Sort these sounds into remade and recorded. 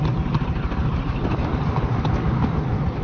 recorded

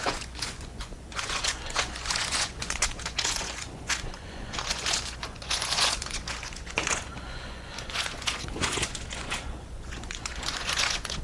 remade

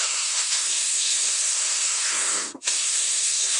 remade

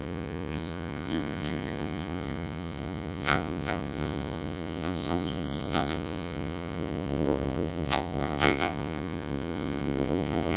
remade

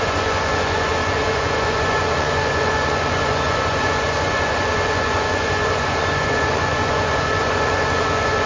remade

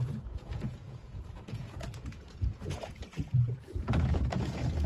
remade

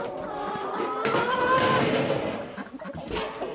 recorded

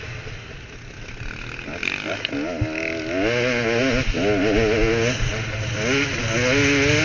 recorded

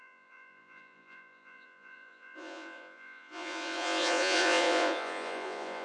remade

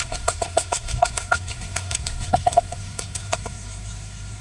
remade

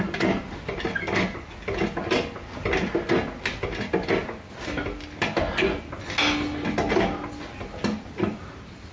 recorded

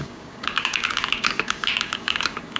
remade